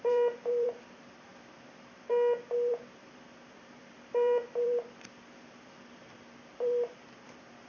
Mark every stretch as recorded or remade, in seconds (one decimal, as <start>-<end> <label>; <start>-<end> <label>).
0.0-2.1 remade; 2.1-2.7 recorded; 2.7-7.7 remade